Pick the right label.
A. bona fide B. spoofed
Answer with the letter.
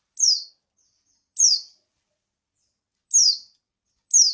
A